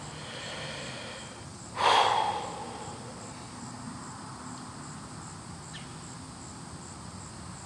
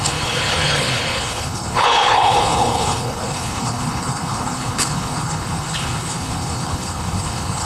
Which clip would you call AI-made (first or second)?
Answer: second